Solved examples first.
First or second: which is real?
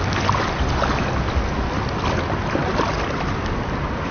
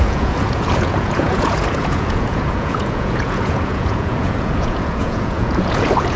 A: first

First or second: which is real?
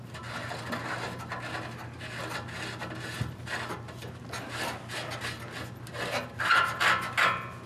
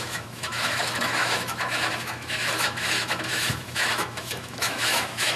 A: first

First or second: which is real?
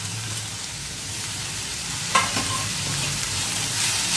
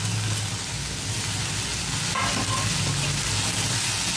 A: second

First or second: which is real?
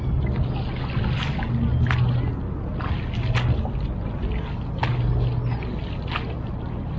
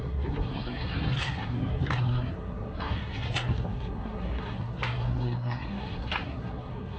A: first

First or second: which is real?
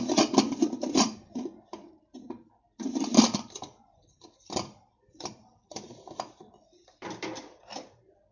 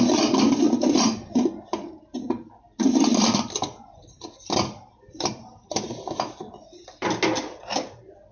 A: second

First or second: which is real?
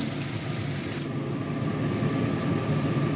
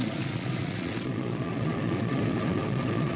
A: first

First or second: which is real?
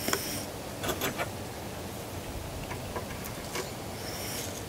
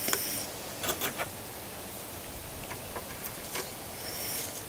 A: first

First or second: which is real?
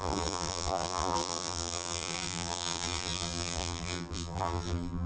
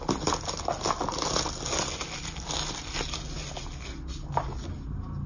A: second